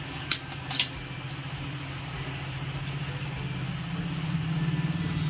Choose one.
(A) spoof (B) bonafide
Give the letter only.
B